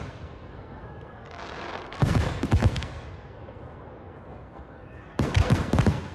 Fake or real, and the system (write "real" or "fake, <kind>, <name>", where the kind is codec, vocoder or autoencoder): fake, codec, SNAC